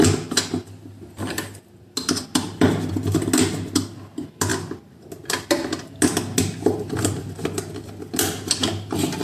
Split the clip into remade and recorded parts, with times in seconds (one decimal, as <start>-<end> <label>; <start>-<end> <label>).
0.0-9.2 recorded